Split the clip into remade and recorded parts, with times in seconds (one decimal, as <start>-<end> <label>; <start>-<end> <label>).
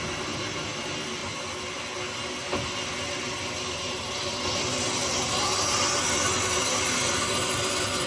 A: 0.0-8.1 recorded